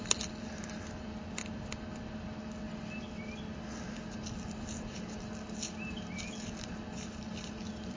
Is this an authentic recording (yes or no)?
yes